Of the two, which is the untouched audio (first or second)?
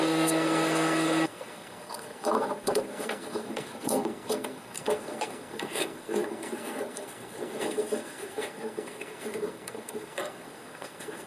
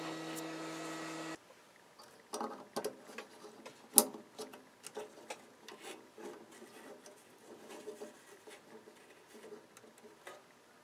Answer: second